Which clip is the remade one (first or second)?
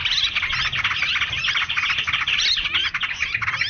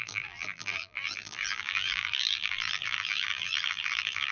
second